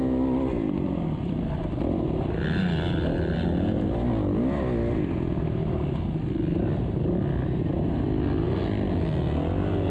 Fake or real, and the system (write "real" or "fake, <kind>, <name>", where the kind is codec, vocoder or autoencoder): real